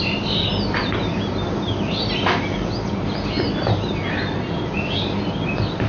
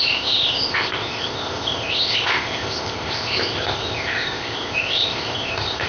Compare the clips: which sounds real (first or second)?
first